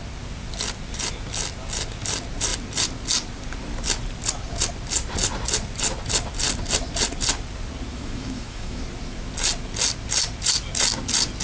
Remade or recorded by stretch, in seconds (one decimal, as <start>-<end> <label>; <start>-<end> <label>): 0.0-7.9 recorded; 7.9-8.8 remade; 8.8-11.4 recorded